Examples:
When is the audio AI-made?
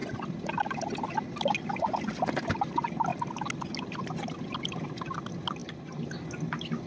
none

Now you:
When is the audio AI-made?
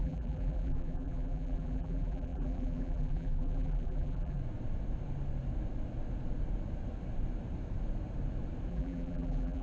0.0-4.4; 8.7-9.6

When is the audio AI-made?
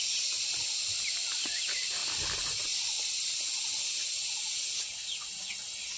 2.0-3.9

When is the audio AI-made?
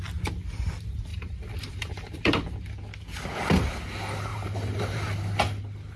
1.1-2.4; 4.3-5.1